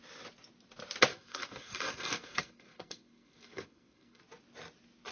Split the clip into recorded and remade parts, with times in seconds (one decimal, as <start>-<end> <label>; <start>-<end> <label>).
0.0-1.1 recorded; 1.1-4.2 remade; 4.2-5.1 recorded

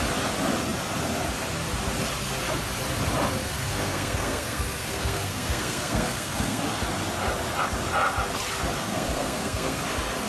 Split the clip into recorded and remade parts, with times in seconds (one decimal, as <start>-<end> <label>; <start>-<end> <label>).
0.0-3.4 recorded; 3.4-6.6 remade; 6.6-8.8 recorded; 8.8-9.8 remade; 9.8-10.3 recorded